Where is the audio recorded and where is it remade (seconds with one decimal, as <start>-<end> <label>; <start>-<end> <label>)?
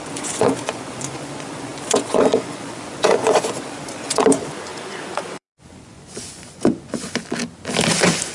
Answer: 0.0-7.2 remade; 7.2-7.9 recorded; 7.9-8.3 remade